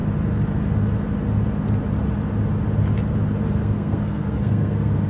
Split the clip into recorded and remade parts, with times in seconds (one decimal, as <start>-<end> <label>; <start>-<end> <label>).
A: 0.0-3.6 recorded; 3.6-5.1 remade